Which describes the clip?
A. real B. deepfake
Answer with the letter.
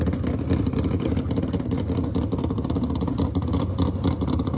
A